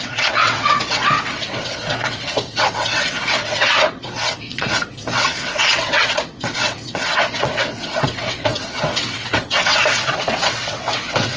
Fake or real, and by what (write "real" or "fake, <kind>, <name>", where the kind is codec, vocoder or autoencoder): fake, vocoder, WaveNeXt